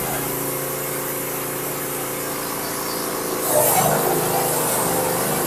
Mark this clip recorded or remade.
recorded